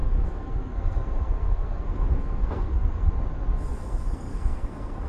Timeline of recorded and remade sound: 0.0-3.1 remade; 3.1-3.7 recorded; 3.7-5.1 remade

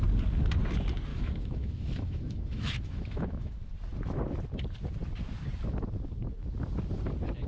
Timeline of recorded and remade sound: 0.0-1.1 recorded; 1.1-3.5 remade; 3.5-7.5 recorded

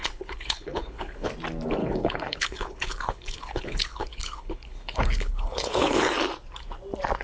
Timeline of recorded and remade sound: 0.0-1.3 remade; 1.3-1.8 recorded; 1.8-6.1 remade; 6.1-7.2 recorded